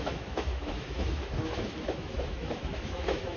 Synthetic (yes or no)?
yes